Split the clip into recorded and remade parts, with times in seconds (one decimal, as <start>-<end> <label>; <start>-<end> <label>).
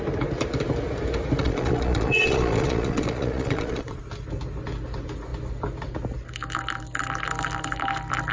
0.0-1.4 recorded; 1.4-4.0 remade; 4.0-8.3 recorded